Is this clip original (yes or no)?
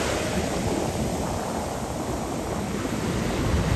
yes